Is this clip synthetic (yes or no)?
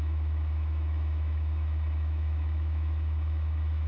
yes